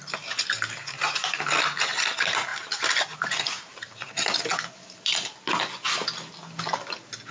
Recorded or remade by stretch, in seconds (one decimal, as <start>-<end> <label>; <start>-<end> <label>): 0.0-2.5 recorded; 2.5-3.9 remade; 3.9-7.3 recorded